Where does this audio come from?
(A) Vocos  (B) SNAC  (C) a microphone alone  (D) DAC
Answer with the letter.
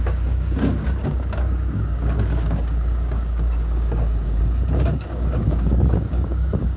D